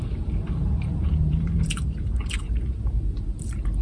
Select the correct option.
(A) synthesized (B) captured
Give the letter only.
A